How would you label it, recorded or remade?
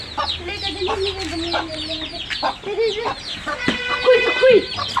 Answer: recorded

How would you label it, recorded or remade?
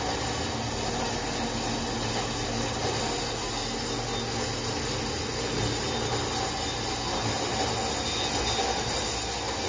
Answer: recorded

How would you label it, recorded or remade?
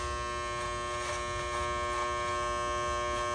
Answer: recorded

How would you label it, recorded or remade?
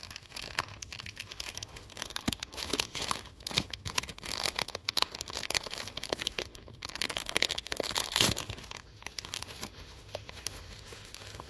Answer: remade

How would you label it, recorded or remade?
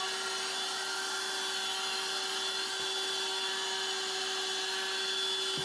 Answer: recorded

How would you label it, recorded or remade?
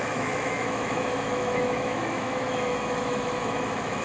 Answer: remade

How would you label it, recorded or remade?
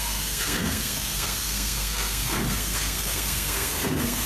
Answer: remade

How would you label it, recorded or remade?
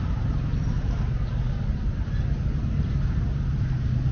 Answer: recorded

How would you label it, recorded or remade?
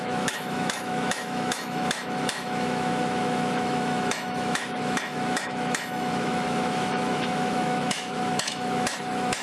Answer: remade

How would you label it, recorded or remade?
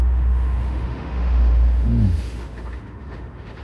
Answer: remade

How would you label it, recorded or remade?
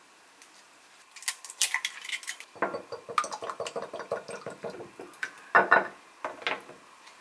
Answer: recorded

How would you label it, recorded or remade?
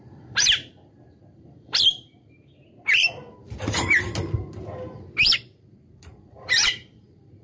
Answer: remade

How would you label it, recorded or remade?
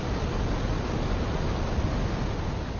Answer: recorded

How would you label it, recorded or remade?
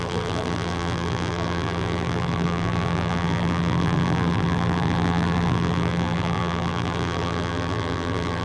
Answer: remade